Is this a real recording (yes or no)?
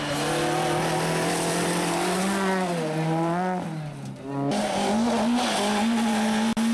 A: yes